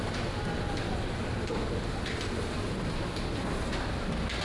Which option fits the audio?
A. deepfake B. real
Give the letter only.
B